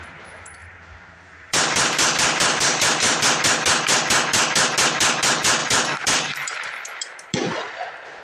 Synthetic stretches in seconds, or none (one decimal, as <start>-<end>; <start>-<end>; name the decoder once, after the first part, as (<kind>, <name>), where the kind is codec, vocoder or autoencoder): 0.6-3.2 (vocoder, BigVGAN v2); 5.6-8.2